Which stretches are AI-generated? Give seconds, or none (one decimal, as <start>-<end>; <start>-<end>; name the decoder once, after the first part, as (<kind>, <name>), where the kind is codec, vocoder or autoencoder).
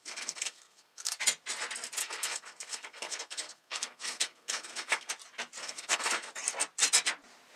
0.0-1.2 (codec, SNAC); 2.0-5.1; 5.6-6.3